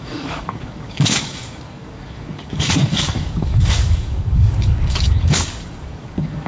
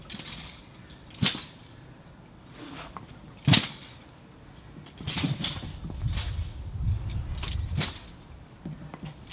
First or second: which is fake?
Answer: first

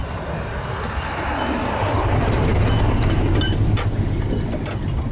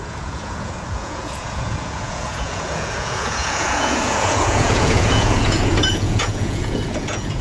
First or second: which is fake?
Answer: second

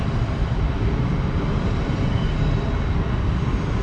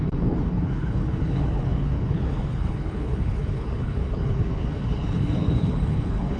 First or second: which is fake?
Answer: second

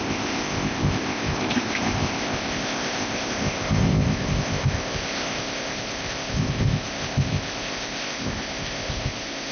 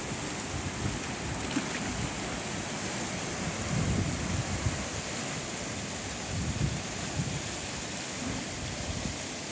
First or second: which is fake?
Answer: first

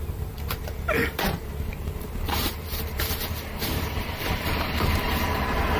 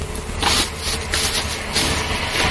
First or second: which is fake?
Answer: first